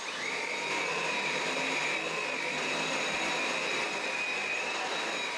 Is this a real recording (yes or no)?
yes